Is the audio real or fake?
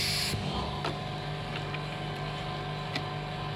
real